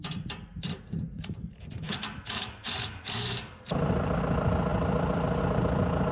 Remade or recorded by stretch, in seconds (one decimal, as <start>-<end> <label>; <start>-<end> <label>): 0.0-0.5 recorded; 0.5-4.2 remade; 4.2-6.1 recorded